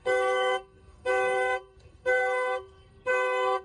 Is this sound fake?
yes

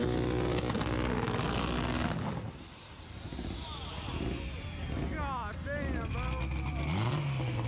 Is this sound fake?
no